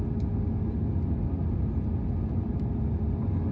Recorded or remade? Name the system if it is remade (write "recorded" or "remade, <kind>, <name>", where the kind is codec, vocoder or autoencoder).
recorded